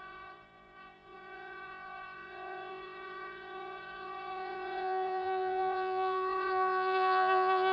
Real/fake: fake